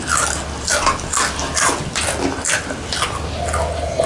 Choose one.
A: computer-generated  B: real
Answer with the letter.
B